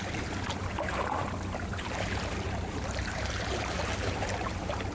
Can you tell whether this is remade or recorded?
remade